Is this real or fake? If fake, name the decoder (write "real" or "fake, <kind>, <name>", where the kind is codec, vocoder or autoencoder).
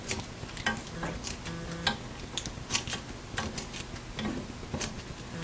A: real